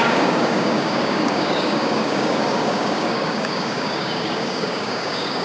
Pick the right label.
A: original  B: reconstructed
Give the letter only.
B